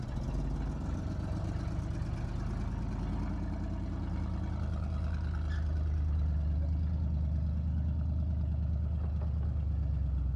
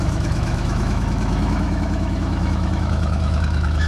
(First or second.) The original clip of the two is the first